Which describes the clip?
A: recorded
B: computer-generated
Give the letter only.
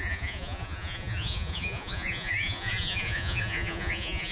B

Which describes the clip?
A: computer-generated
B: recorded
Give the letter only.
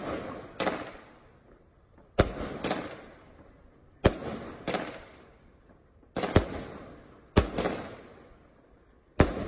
B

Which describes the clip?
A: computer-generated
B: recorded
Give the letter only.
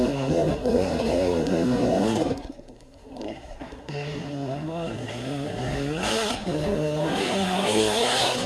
A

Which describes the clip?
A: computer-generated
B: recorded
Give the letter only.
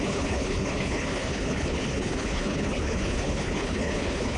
A